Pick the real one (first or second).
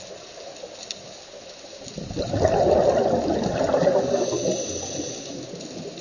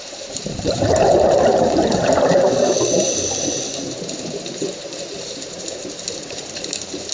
first